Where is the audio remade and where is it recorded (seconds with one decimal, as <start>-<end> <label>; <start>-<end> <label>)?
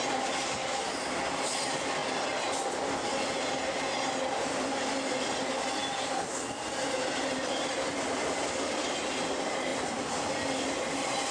0.0-5.8 recorded; 5.8-6.8 remade; 6.8-9.7 recorded; 9.7-10.9 remade; 10.9-11.3 recorded